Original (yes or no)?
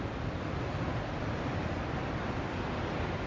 yes